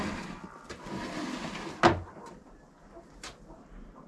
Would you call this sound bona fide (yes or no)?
yes